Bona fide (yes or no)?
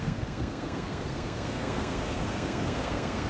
no